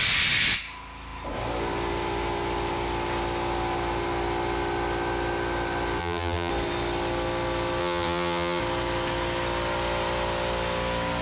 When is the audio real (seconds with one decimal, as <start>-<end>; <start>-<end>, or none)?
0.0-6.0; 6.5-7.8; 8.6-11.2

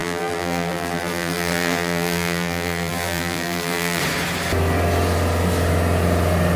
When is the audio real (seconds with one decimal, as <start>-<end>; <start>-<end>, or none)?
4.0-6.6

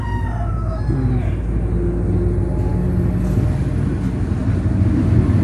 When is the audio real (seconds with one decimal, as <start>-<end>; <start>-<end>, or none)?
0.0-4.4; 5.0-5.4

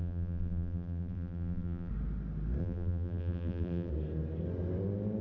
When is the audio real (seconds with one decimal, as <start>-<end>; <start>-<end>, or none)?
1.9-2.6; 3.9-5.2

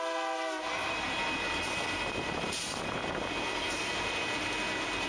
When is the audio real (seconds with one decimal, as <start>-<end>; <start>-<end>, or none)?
0.0-0.8; 3.9-5.1

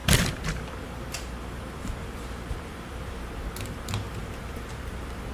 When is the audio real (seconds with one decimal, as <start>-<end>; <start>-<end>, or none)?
3.2-4.2

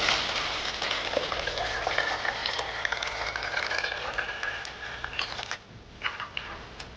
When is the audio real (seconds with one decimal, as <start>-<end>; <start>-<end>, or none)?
0.0-7.0